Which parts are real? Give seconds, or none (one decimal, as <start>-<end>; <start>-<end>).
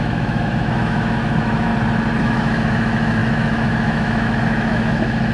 1.7-2.2